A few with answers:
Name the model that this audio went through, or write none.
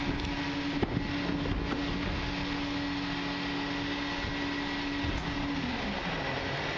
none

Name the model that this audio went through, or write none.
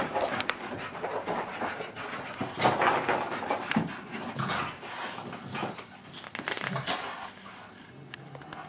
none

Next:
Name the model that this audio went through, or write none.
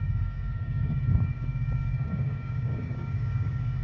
codec, DAC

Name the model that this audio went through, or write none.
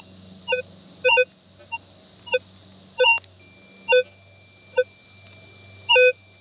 none